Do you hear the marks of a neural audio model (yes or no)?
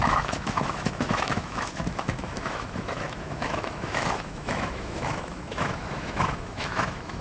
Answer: yes